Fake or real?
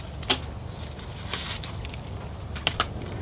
real